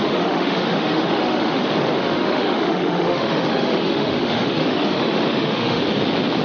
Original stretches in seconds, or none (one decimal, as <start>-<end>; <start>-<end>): 1.6-2.0; 5.8-6.4